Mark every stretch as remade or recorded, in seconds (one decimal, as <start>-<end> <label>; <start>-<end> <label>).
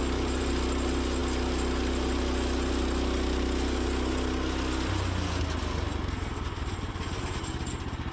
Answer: 0.0-0.5 remade; 0.5-8.1 recorded